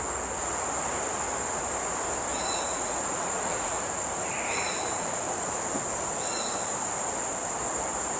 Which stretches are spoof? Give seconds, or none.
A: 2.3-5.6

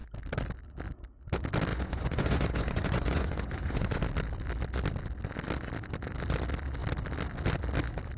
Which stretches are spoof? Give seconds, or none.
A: 1.7-4.0

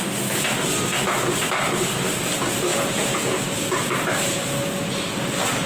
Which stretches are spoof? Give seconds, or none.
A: 2.7-3.4